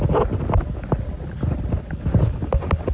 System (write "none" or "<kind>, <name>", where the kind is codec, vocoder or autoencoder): none